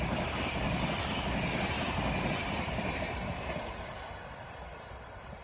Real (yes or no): yes